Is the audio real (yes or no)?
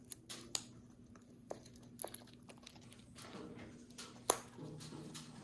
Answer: yes